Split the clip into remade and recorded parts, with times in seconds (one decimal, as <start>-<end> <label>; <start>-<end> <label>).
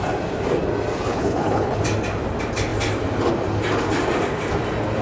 0.0-1.1 recorded; 1.1-1.8 remade; 1.8-5.0 recorded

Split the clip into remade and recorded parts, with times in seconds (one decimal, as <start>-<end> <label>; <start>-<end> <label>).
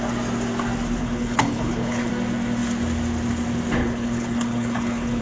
0.0-1.0 recorded; 1.0-2.1 remade; 2.1-3.8 recorded; 3.8-5.2 remade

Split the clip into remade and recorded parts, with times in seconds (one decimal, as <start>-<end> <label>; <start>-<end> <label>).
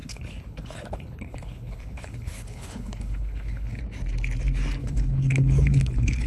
0.0-3.8 remade; 3.8-4.8 recorded; 4.8-6.3 remade